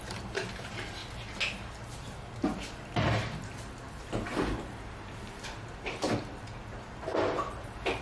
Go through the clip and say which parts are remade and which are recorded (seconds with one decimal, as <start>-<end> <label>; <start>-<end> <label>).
0.0-1.0 remade; 1.0-1.5 recorded; 1.5-8.0 remade

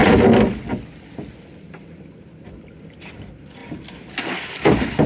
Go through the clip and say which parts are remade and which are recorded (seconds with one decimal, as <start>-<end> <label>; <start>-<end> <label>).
0.0-5.1 recorded